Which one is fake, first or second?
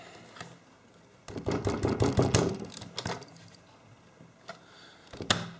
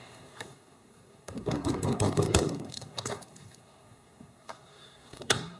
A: second